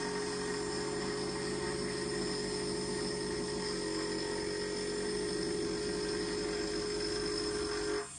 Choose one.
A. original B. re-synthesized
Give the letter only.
A